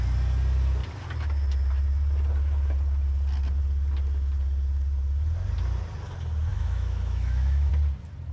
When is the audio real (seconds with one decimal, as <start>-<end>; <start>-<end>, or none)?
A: 0.0-6.5; 7.7-8.3